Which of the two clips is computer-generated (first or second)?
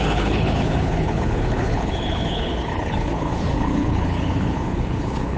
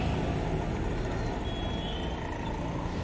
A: first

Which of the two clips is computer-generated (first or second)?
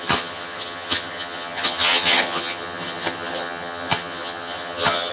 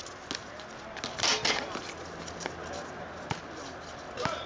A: first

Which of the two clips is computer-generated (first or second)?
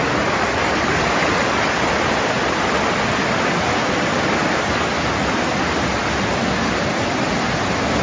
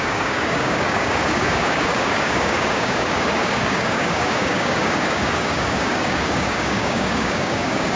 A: second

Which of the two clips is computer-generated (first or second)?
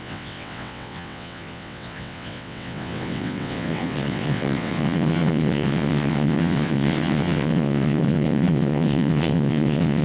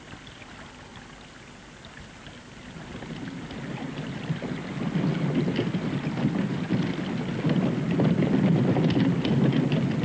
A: first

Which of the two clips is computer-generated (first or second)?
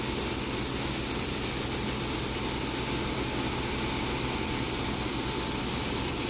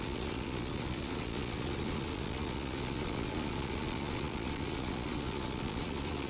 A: second